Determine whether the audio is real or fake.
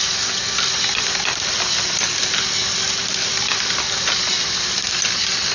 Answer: real